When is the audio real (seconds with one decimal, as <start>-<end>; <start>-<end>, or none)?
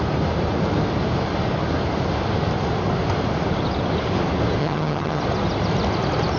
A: 0.0-4.6; 5.2-6.4